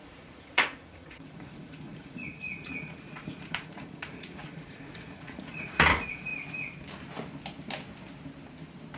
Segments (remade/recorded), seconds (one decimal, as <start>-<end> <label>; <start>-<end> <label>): 0.0-6.3 remade; 6.3-9.0 recorded